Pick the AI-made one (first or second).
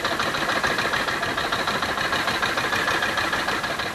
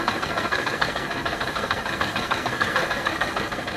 second